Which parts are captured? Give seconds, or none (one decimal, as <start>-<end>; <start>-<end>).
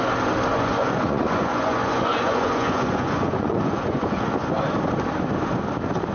0.0-0.5; 4.2-6.1